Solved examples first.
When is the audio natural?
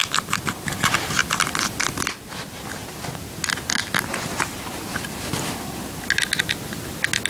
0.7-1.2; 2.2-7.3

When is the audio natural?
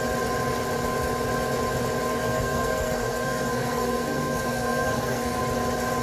0.0-2.1; 5.4-6.0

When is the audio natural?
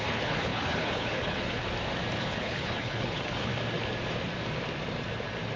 1.6-2.2; 3.5-5.6